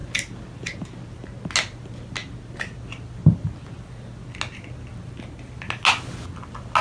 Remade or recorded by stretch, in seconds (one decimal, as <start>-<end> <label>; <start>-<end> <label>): 0.0-6.8 recorded